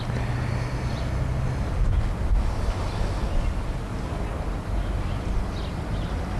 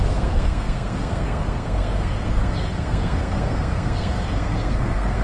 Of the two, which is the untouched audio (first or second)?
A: first